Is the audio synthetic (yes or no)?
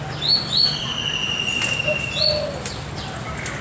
no